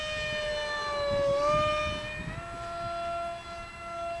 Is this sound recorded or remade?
recorded